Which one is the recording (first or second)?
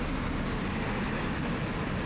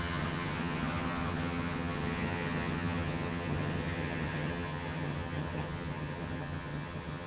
first